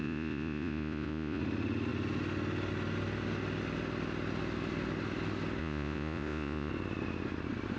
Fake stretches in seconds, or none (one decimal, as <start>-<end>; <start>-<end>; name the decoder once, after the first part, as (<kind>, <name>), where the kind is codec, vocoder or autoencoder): 0.0-1.4 (vocoder, Vocos); 5.6-6.7